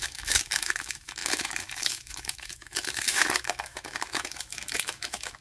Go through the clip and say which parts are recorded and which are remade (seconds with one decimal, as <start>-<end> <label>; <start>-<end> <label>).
0.0-5.4 remade